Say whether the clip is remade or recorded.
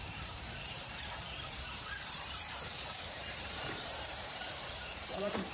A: remade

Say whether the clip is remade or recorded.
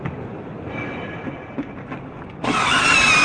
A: recorded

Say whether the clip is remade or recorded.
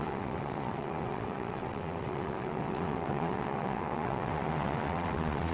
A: remade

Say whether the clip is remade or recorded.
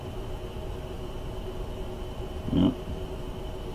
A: recorded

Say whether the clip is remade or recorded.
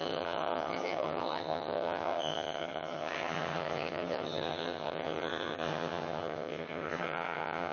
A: remade